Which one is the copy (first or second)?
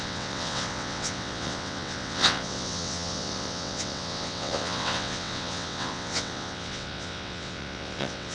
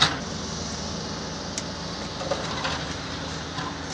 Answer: first